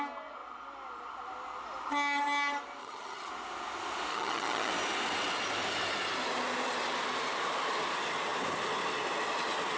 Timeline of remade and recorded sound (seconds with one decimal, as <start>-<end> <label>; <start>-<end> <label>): 0.0-2.8 recorded; 2.8-3.3 remade; 3.3-4.1 recorded; 4.1-4.7 remade; 4.7-9.8 recorded